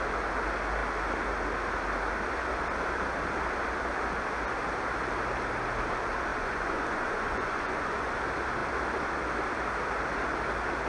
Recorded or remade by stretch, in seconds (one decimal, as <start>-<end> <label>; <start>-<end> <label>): 0.0-6.3 recorded; 6.3-8.1 remade; 8.1-10.9 recorded